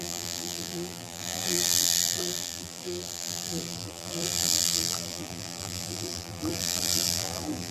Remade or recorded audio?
remade